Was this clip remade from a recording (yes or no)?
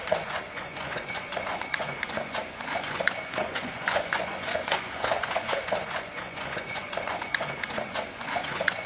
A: yes